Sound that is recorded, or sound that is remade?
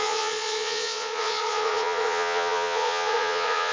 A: remade